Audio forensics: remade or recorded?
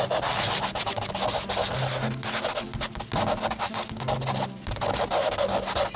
recorded